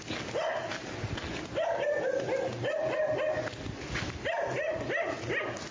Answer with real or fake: real